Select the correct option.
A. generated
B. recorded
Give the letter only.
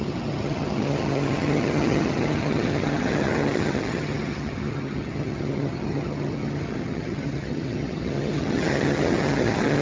A